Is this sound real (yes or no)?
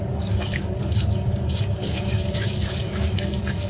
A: no